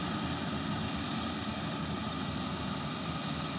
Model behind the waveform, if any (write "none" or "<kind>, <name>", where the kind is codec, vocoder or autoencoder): none